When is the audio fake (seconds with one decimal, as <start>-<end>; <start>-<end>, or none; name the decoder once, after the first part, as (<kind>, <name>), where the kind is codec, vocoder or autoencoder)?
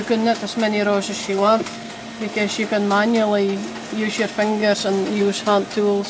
1.2-1.9 (codec, SNAC)